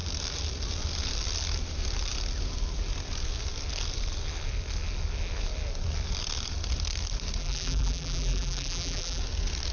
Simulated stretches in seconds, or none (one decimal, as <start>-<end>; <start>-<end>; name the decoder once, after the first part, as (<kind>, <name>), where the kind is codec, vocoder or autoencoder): 7.4-9.2 (vocoder, BigVGAN v2)

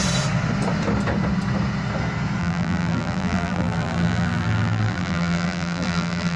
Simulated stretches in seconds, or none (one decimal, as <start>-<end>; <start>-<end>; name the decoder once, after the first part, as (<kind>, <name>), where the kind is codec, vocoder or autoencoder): 2.4-6.4 (vocoder, BigVGAN v2)

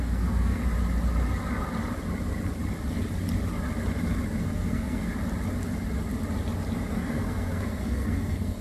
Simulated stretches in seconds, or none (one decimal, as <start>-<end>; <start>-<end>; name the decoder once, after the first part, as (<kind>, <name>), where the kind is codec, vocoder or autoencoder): 0.0-0.6 (codec, SNAC); 4.4-5.1; 6.9-8.6